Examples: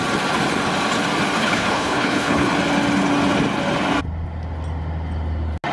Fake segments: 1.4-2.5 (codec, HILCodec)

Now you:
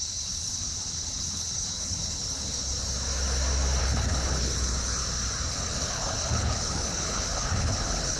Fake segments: 0.0-2.6 (codec, HILCodec); 3.8-5.0; 5.5-8.2

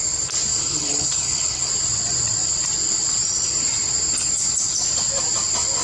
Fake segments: 0.5-1.7 (codec, HILCodec)

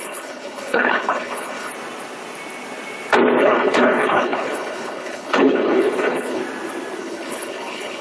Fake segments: 0.0-1.7 (codec, HILCodec); 3.4-6.4; 7.0-8.0

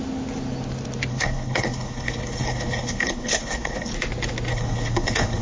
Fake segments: 1.1-3.9 (codec, HILCodec); 4.5-5.4

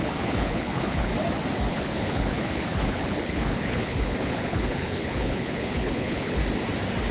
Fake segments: 0.0-1.1 (codec, HILCodec); 1.7-6.4

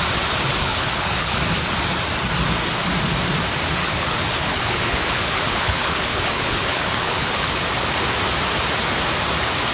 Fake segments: 0.6-1.4 (codec, HILCodec); 3.8-7.6

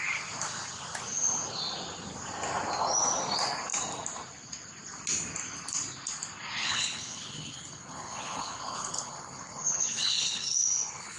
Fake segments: 6.6-11.2 (codec, HILCodec)